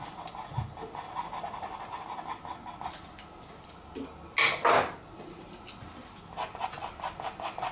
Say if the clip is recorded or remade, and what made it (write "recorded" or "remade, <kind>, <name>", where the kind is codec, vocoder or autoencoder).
recorded